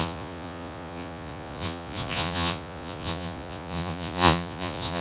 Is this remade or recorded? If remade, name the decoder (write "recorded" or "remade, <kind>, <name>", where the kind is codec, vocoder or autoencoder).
remade, vocoder, Vocos